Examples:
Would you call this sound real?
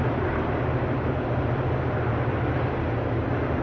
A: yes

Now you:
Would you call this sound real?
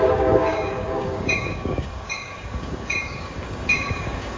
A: no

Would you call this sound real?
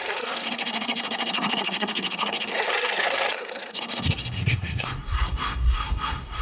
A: no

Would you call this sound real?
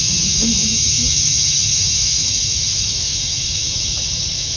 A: no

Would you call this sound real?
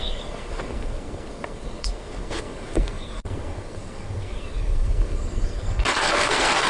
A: no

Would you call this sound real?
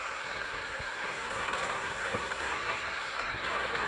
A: no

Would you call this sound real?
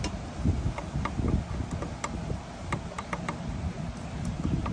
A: yes